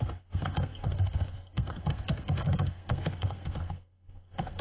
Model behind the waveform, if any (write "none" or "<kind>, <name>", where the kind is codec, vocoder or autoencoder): codec, SNAC